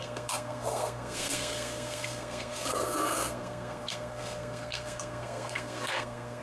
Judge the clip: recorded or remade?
remade